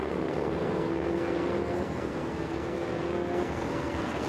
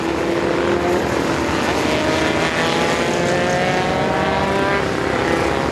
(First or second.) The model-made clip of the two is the first